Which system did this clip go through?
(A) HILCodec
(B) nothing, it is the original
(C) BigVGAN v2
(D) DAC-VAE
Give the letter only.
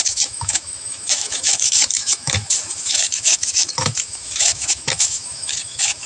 D